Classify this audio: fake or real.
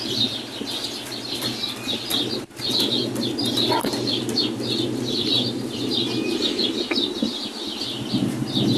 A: real